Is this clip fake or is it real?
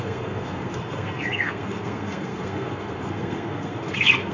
fake